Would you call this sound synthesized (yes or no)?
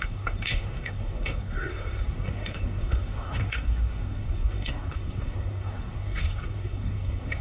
yes